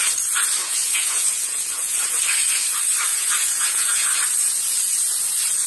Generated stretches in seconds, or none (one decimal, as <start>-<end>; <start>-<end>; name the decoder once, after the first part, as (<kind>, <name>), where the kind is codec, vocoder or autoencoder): 0.6-2.2 (vocoder, Vocos); 3.1-4.1